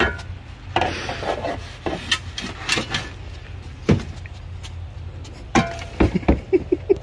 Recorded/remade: recorded